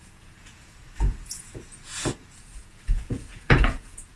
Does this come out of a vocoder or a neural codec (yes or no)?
yes